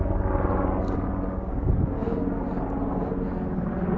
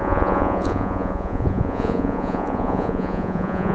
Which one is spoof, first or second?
second